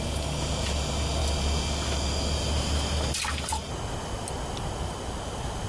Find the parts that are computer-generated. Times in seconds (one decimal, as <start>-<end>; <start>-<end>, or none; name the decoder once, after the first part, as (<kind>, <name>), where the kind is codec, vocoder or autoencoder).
none

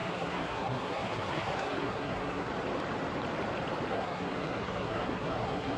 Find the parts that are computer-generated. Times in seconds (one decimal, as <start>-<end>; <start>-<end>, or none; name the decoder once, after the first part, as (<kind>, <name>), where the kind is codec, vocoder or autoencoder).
0.0-2.5 (codec, SNAC); 3.9-5.8

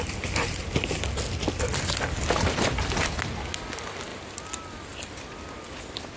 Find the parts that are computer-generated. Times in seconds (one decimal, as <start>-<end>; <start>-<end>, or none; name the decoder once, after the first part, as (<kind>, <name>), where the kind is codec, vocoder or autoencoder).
none

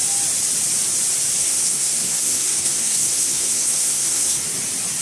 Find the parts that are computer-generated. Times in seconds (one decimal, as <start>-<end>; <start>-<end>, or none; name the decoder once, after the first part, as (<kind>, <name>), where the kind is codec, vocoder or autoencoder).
1.4-4.4 (codec, SNAC)

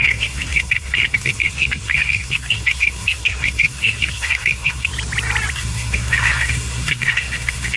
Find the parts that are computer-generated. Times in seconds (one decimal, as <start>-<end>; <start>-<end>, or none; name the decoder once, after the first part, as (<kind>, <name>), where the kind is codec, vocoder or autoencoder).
0.0-4.9 (codec, SNAC); 5.5-7.8